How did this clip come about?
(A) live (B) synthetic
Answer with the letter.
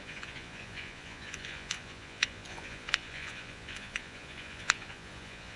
B